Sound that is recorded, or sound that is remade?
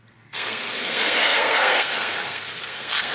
remade